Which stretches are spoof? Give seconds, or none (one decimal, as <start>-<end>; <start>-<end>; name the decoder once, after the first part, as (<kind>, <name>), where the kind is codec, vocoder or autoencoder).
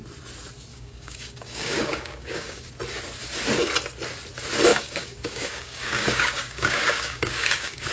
0.7-2.7 (codec, DAC); 4.7-7.9